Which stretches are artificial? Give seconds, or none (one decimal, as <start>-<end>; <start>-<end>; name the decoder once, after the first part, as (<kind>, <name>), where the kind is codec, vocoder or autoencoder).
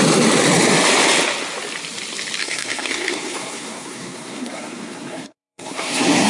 2.4-6.3 (codec, SNAC)